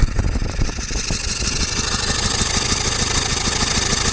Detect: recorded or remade recorded